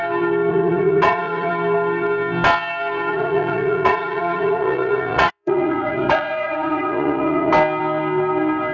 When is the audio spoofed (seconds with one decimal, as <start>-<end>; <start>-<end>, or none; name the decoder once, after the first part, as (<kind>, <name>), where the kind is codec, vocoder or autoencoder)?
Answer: 0.5-1.5 (vocoder, Vocos); 3.1-7.5